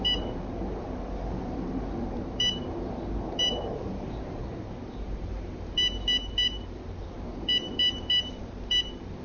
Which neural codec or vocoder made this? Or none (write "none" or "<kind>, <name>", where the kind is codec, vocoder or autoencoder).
vocoder, BigVGAN v2